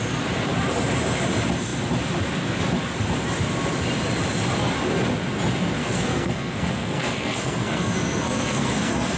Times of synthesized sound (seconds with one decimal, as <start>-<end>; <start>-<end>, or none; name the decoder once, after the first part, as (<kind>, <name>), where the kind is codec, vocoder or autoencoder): 5.8-9.2 (codec, SNAC)